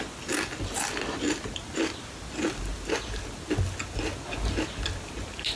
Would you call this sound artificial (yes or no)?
no